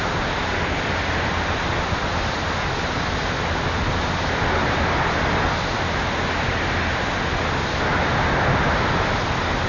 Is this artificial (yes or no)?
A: no